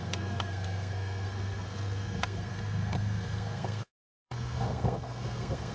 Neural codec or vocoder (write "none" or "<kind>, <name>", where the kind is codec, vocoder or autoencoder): codec, SNAC